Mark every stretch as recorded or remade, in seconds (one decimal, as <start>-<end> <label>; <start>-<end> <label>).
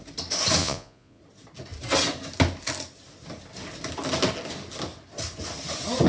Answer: 0.0-0.6 recorded; 0.6-1.2 remade; 1.2-6.1 recorded